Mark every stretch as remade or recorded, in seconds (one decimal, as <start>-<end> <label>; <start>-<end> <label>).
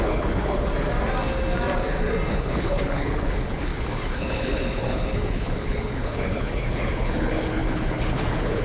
0.0-0.7 remade; 0.7-2.3 recorded; 2.3-8.6 remade